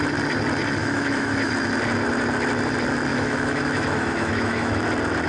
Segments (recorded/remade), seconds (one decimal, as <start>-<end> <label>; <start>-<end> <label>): 0.0-0.8 recorded; 0.8-1.5 remade; 1.5-3.1 recorded; 3.1-4.8 remade; 4.8-5.3 recorded

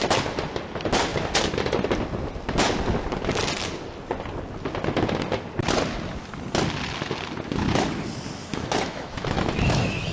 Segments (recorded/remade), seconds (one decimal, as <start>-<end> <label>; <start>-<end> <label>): 0.0-8.4 recorded; 8.4-10.1 remade

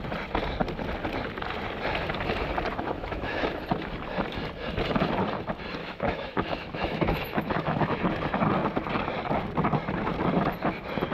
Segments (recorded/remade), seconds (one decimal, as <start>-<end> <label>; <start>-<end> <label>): 0.0-2.7 recorded; 2.7-3.6 remade; 3.6-5.8 recorded; 5.8-8.0 remade; 8.0-11.1 recorded

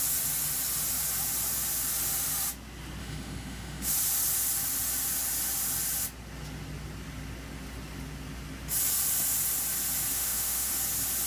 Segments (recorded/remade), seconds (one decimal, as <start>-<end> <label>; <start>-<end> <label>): 0.0-3.0 recorded; 3.0-3.9 remade; 3.9-10.1 recorded; 10.1-10.7 remade; 10.7-11.3 recorded